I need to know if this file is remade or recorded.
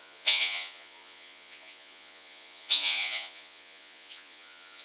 remade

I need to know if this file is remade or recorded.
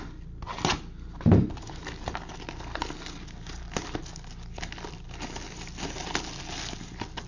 recorded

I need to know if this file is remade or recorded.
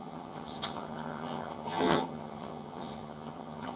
remade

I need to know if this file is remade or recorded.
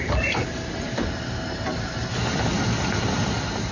recorded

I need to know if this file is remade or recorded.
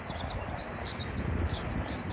remade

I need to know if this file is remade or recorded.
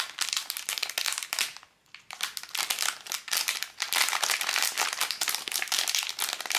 recorded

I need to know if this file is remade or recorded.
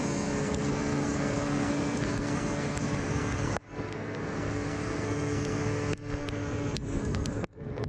remade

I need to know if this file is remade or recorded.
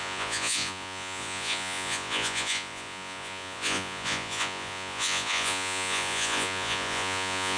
remade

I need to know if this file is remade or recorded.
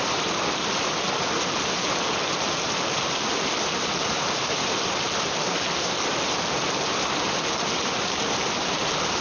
recorded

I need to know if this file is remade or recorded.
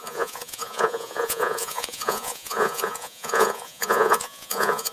remade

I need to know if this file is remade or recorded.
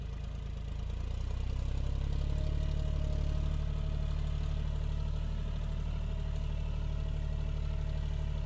recorded